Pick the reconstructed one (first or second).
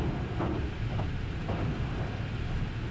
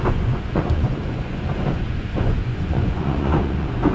second